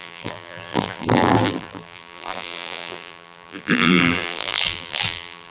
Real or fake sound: fake